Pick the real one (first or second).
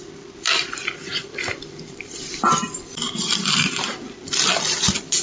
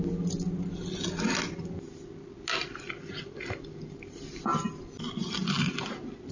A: second